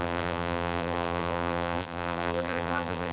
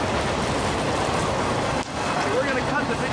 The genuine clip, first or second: second